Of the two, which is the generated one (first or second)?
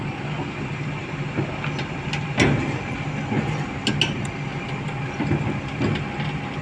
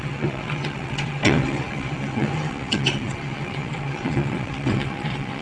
second